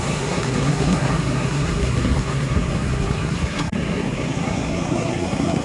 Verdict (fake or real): fake